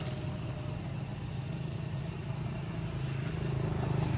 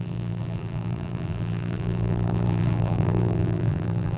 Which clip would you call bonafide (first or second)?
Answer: first